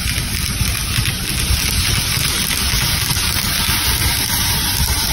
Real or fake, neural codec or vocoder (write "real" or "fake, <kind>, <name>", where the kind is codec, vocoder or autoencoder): real